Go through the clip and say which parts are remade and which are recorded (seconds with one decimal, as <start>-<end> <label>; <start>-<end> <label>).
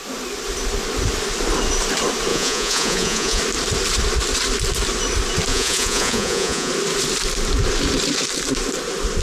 0.0-2.3 recorded; 2.3-3.4 remade; 3.4-5.5 recorded; 5.5-6.7 remade; 6.7-9.2 recorded